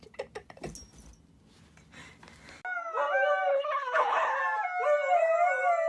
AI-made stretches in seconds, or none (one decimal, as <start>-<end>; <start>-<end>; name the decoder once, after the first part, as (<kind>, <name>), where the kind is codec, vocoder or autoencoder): 3.5-4.4 (codec, HILCodec)